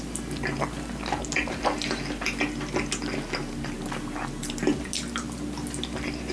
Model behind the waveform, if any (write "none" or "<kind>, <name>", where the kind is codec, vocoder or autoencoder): none